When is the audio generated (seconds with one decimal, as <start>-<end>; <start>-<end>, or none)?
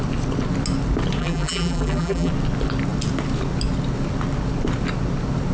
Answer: 1.2-2.3